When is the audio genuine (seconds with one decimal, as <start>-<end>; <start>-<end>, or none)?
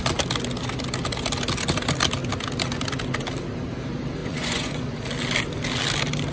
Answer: 0.0-4.2; 5.0-6.3